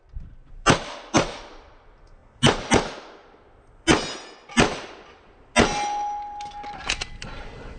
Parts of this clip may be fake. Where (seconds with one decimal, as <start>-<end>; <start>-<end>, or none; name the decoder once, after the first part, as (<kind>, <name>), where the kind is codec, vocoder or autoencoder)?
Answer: none